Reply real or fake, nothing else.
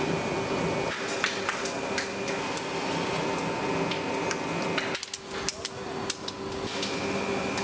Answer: real